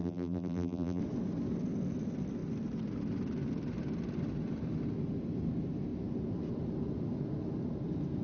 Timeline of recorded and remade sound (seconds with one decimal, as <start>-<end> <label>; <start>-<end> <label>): 0.0-1.0 remade; 1.0-8.2 recorded